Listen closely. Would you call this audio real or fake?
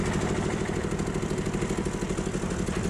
real